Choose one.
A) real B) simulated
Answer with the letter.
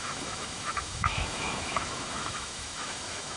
B